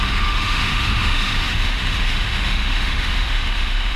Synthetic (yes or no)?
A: yes